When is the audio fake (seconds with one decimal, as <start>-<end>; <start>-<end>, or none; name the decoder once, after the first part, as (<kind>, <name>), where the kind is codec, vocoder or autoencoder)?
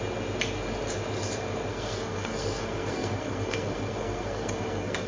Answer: 1.7-5.1 (codec, SNAC)